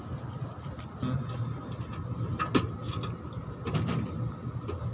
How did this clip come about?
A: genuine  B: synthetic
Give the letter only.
A